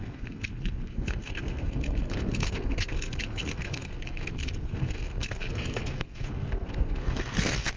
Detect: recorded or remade remade